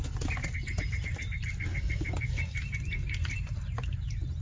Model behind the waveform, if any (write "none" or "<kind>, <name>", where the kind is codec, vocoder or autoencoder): none